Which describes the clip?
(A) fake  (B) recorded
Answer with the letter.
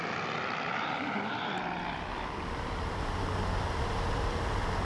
B